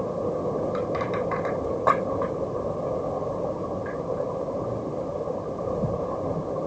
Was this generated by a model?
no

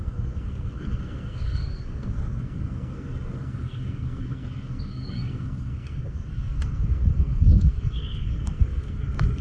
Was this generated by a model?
yes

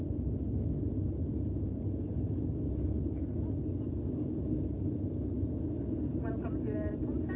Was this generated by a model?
no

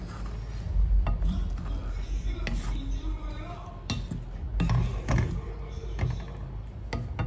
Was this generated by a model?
no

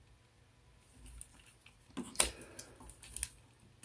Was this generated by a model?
no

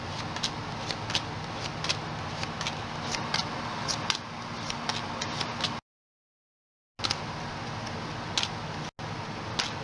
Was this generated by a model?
no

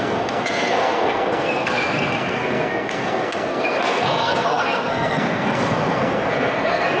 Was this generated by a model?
yes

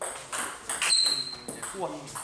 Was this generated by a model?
no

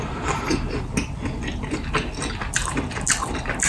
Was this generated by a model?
no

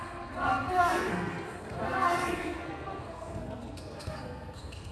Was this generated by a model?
yes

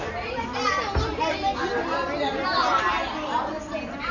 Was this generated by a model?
no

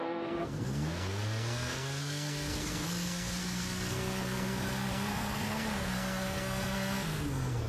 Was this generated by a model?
yes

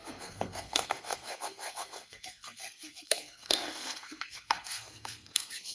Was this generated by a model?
yes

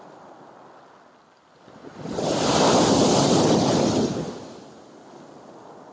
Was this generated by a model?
no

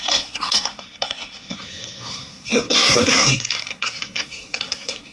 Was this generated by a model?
yes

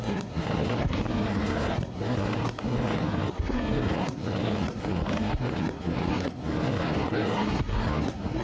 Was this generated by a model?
yes